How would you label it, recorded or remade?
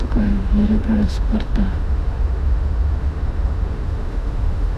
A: remade